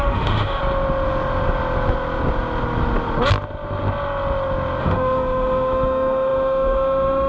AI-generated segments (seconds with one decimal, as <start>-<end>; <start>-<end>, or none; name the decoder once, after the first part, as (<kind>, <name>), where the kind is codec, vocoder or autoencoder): 0.0-0.6 (autoencoder, DAC-VAE); 4.8-7.3